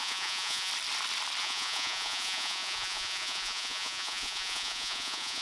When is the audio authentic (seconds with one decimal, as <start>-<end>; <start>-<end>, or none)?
0.7-1.4